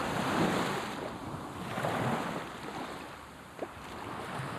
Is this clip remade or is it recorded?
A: recorded